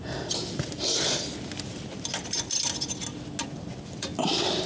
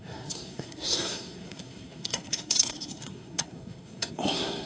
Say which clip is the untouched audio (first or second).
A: first